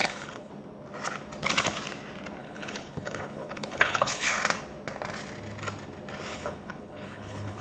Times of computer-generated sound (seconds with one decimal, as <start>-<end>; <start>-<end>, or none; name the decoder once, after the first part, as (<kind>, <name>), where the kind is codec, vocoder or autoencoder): 0.0-0.5 (codec, HILCodec); 2.4-4.4; 6.3-7.6